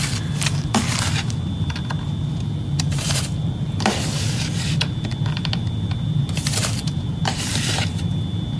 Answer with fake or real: fake